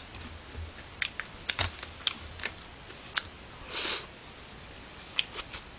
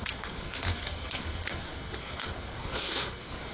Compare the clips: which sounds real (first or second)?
first